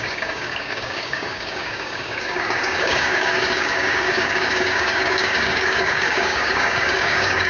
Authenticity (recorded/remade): remade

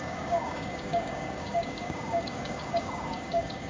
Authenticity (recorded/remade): remade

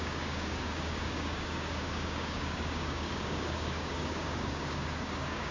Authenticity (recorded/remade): remade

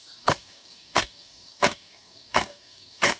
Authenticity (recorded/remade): remade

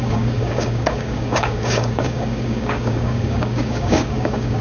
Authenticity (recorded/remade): remade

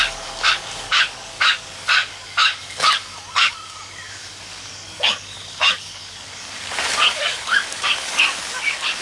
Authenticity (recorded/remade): remade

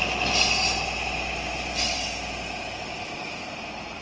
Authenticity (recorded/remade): recorded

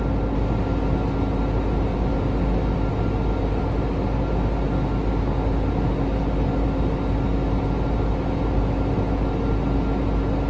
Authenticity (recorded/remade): recorded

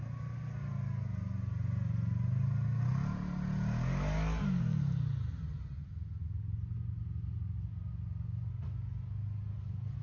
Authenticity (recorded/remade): recorded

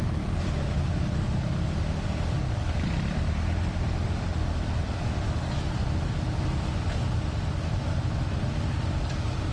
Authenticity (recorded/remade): recorded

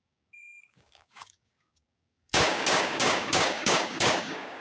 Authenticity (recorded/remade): remade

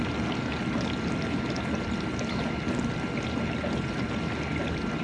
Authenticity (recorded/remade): recorded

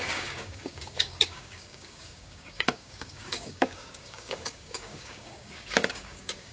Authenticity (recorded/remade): remade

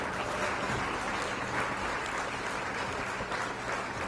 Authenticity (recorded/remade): recorded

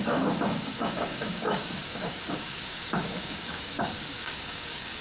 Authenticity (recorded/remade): remade